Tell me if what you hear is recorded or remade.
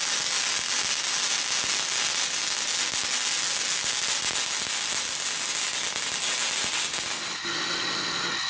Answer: recorded